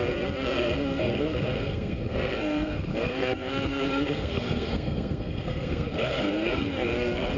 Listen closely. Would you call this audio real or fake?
fake